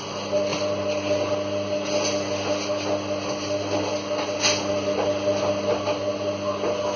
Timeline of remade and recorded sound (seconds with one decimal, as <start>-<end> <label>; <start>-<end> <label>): 0.0-7.0 recorded